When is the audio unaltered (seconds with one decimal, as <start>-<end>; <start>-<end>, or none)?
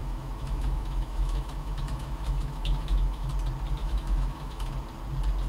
3.3-3.8; 4.7-5.5